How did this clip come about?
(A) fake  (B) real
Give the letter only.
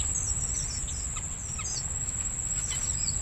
B